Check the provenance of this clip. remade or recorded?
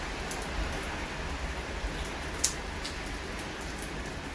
recorded